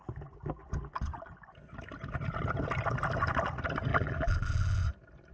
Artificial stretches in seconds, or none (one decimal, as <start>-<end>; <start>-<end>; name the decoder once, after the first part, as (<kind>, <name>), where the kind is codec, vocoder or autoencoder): 3.9-4.8 (vocoder, BigVGAN v2)